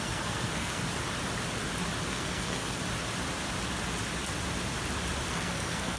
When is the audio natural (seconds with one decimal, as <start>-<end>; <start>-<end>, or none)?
0.8-2.1; 2.8-5.3